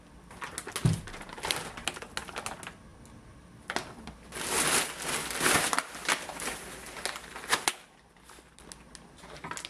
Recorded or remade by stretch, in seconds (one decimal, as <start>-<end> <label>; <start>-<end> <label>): 0.0-9.7 recorded